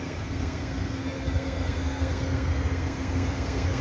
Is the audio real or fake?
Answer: fake